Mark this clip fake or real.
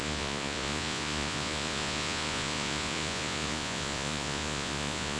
fake